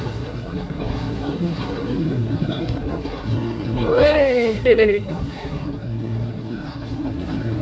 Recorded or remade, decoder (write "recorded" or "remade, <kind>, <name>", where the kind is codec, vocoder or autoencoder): remade, codec, SNAC